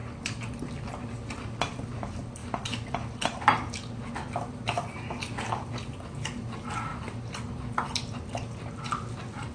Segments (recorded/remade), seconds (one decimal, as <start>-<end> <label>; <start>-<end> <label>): 0.0-9.5 recorded